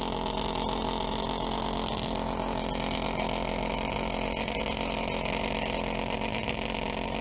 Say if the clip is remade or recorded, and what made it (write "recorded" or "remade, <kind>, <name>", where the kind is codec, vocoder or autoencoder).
recorded